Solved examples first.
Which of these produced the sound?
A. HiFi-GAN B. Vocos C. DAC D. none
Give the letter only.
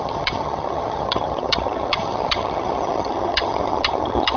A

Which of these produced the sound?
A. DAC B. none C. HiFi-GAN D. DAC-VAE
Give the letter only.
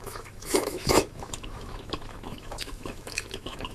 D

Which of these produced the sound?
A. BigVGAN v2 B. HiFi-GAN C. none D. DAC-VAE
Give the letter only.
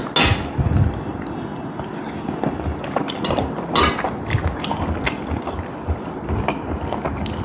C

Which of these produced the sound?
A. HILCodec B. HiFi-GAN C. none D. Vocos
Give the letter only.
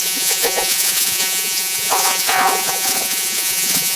D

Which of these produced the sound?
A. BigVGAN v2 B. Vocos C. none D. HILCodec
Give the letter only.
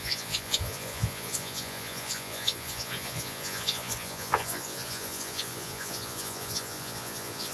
B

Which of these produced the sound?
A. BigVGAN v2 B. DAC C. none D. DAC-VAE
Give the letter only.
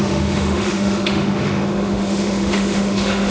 D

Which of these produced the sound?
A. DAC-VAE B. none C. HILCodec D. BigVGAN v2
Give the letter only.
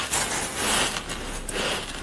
B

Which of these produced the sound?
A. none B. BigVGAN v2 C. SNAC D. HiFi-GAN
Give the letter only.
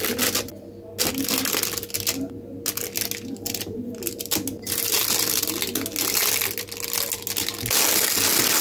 A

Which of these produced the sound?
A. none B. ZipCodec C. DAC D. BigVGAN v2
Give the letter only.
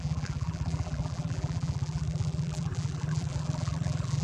D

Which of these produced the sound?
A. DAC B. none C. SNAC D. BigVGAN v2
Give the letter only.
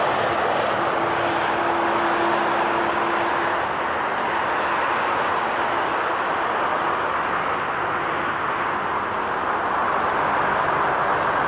B